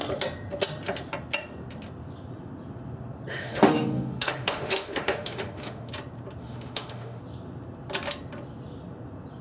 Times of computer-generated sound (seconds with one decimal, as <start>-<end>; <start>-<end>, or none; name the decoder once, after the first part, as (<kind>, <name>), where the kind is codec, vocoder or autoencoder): 3.3-5.9 (autoencoder, DAC-VAE); 6.4-7.2